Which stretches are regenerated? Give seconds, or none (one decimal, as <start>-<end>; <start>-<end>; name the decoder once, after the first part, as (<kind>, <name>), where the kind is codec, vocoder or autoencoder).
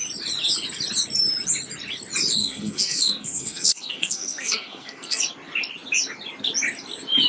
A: 2.4-5.2 (codec, SNAC)